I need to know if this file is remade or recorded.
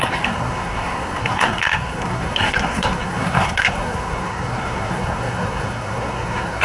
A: remade